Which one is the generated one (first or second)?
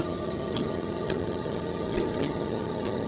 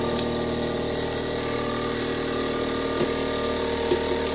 first